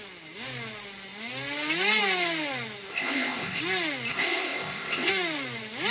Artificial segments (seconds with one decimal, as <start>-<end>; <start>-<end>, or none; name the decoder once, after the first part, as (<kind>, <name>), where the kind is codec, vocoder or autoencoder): 2.9-3.6 (codec, ZipCodec); 4.1-5.1